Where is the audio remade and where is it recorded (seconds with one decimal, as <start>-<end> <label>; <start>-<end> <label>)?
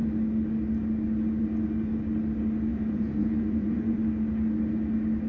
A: 0.0-2.7 recorded; 2.7-4.0 remade; 4.0-5.3 recorded